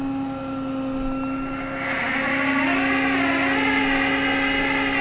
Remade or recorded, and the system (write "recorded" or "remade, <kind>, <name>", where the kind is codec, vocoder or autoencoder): recorded